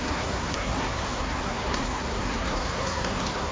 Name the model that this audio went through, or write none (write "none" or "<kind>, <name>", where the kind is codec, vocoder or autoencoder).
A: codec, SNAC